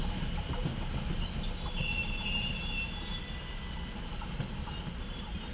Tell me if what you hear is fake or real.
real